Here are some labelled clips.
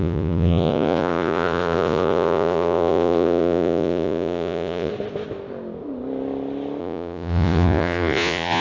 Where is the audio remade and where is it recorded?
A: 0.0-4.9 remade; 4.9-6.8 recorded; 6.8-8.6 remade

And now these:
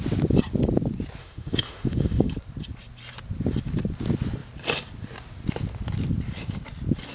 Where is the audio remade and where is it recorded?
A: 0.0-1.2 recorded; 1.2-2.3 remade; 2.3-7.1 recorded

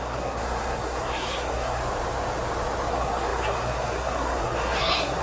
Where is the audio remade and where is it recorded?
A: 0.0-1.8 remade; 1.8-2.9 recorded; 2.9-5.2 remade

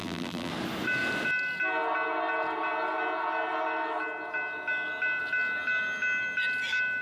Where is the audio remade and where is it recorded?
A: 0.0-0.5 remade; 0.5-7.0 recorded

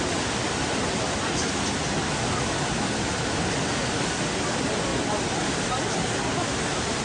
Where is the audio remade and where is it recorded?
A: 0.0-7.0 recorded

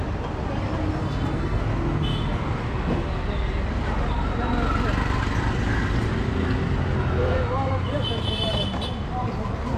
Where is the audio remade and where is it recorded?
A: 0.0-1.0 recorded; 1.0-1.6 remade; 1.6-9.8 recorded

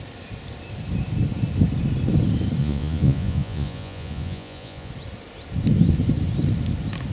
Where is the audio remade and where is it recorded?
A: 0.0-2.6 recorded; 2.6-4.9 remade; 4.9-7.1 recorded